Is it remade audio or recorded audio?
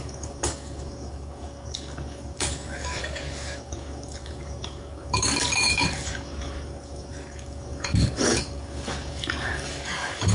remade